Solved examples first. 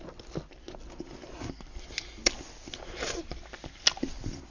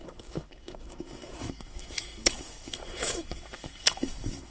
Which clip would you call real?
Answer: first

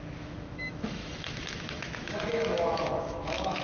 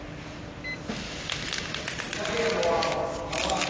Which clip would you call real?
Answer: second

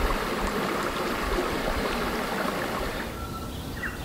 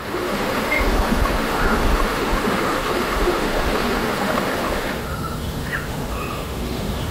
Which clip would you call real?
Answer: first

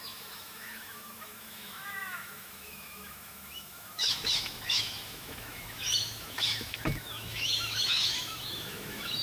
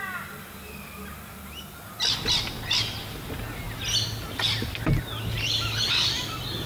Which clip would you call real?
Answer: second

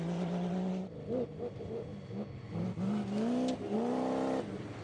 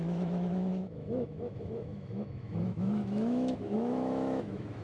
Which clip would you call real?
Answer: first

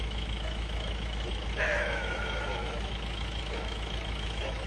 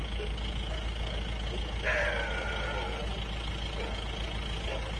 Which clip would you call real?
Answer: second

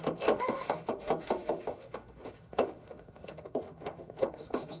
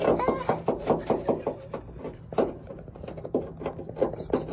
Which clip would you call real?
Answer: second